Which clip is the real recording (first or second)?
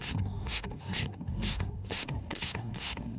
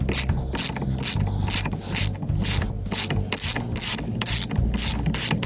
second